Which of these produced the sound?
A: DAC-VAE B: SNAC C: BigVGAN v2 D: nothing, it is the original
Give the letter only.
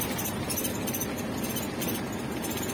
D